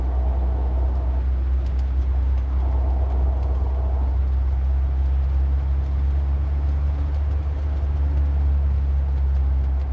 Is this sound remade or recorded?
recorded